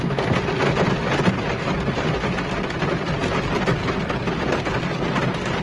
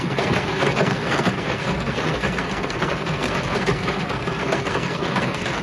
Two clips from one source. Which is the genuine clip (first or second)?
first